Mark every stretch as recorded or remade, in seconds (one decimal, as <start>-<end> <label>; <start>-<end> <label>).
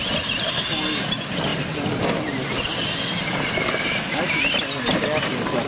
0.0-5.7 recorded